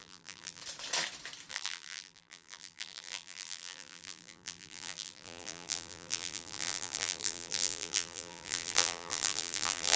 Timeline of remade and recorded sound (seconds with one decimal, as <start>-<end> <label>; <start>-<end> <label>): 0.0-0.6 remade; 0.6-1.5 recorded; 1.5-10.0 remade